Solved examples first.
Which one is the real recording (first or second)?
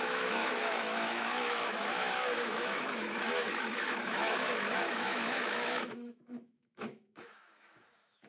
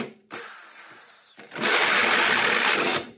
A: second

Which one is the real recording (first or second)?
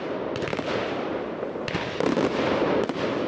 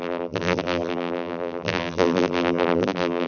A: first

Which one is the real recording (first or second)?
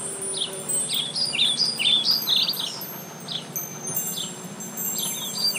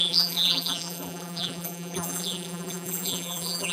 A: first